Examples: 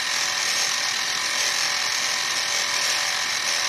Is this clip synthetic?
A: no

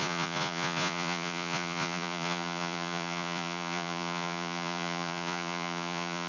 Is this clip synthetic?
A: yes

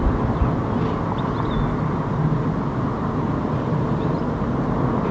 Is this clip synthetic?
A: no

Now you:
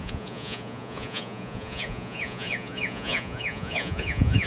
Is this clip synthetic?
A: yes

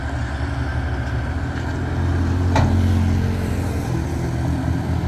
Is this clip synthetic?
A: no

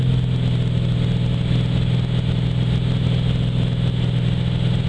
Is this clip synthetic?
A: no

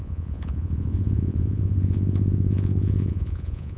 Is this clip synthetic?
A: yes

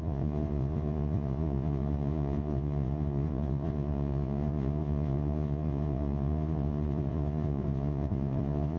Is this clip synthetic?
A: yes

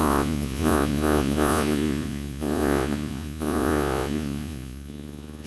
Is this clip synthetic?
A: yes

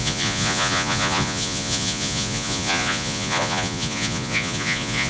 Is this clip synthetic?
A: yes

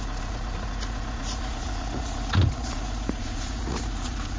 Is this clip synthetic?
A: yes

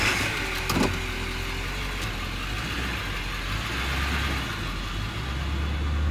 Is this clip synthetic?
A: no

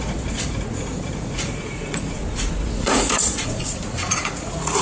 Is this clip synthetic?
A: yes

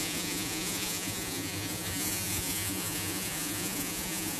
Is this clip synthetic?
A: yes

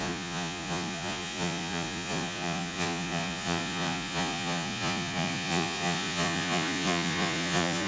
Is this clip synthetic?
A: yes